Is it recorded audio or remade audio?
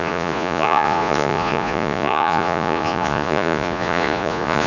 remade